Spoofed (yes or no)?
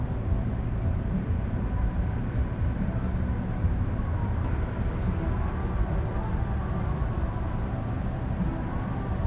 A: no